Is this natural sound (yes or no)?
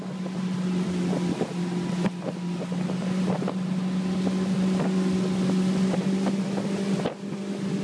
yes